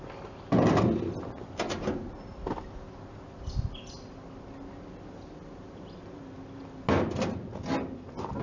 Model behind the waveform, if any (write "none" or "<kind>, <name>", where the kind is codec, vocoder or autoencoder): none